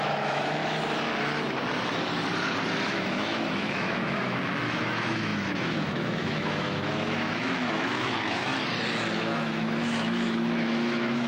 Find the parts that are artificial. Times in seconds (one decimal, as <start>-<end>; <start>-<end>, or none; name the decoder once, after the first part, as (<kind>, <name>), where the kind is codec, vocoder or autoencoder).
0.0-0.6 (autoencoder, DAC-VAE); 2.9-8.5; 9.2-11.3